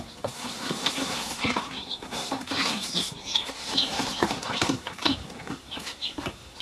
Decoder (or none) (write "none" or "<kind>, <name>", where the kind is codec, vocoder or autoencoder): codec, SNAC